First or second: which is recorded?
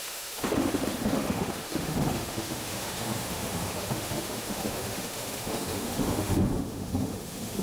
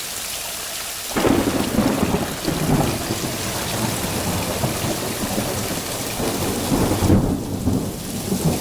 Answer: second